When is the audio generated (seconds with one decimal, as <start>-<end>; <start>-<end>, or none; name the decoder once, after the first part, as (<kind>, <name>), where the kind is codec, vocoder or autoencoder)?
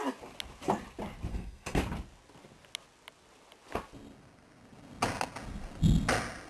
1.3-1.8 (codec, SNAC)